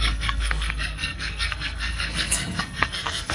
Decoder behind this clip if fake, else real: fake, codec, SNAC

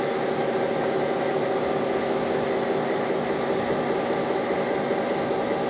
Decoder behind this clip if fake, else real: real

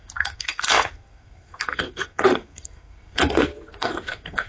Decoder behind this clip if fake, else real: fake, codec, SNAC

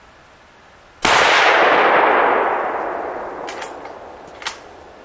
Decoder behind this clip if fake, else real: real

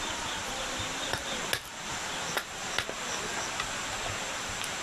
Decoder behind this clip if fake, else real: real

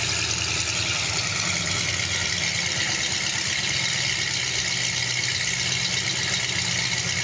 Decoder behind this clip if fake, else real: real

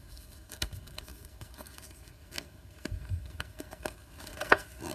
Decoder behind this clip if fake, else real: fake, codec, SNAC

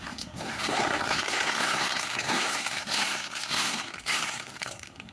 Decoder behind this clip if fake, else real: fake, codec, SNAC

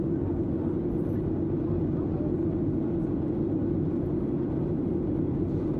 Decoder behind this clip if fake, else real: real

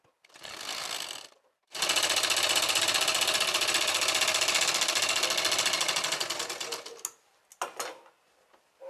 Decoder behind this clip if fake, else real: real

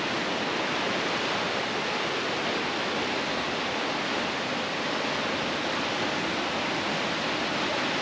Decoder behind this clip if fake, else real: real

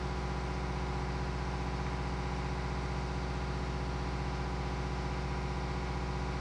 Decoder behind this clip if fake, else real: real